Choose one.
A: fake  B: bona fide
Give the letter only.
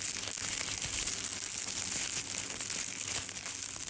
B